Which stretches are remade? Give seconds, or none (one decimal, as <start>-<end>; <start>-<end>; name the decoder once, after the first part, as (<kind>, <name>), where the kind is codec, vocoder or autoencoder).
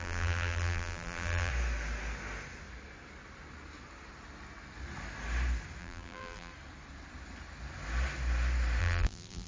0.0-1.5 (vocoder, BigVGAN v2); 5.8-6.5; 8.8-9.5